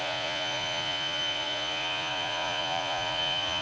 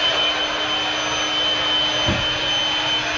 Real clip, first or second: second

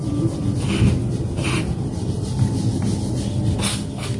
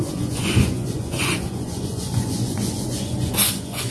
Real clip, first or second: first